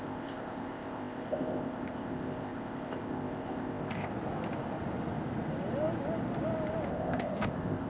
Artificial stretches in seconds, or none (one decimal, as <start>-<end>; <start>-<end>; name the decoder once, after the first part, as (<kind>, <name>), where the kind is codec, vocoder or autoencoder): 0.0-4.1 (codec, ZipCodec); 6.9-7.9

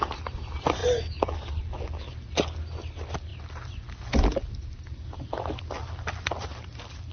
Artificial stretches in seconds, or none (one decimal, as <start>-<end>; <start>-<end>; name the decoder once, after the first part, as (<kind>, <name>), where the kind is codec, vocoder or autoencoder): none

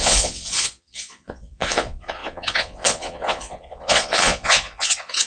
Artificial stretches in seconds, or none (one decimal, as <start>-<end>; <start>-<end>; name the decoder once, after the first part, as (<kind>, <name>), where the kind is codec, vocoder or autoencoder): 0.0-5.3 (vocoder, Vocos)

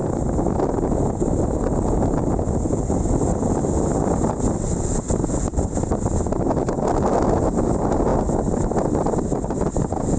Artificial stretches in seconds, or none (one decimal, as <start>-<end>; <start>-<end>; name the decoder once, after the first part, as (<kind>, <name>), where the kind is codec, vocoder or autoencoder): 5.5-6.1 (vocoder, BigVGAN v2)

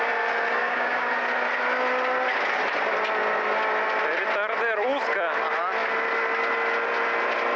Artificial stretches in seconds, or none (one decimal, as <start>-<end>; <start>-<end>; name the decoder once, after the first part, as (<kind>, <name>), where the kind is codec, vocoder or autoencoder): 0.6-1.1 (codec, DAC)

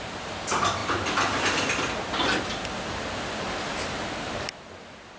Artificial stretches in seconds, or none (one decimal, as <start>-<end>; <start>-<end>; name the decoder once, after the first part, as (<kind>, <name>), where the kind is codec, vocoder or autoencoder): none

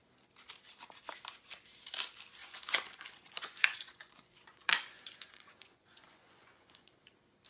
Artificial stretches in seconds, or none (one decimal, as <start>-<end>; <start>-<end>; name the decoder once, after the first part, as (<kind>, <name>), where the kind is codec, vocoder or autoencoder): 2.4-6.9 (vocoder, Vocos)

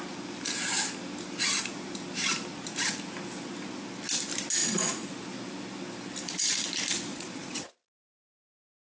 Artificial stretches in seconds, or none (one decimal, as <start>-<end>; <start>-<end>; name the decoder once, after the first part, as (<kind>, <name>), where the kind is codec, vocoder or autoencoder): 4.6-5.1 (vocoder, Vocos); 7.1-7.7